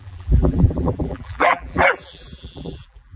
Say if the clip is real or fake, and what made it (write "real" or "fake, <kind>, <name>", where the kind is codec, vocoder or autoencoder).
fake, vocoder, BigVGAN v2